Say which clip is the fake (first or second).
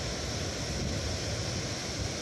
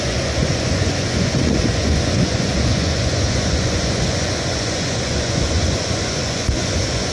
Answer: second